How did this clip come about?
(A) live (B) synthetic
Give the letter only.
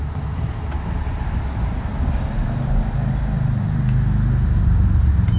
A